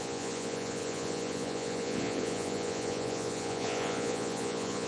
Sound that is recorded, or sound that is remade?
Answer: remade